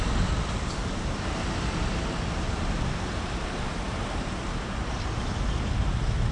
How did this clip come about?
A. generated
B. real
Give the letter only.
B